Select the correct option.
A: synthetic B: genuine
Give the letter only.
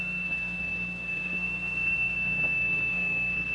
A